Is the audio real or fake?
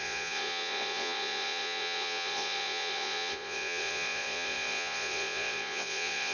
fake